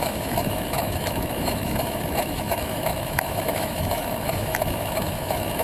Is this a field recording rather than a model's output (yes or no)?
no